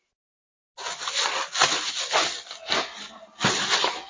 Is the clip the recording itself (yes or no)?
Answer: yes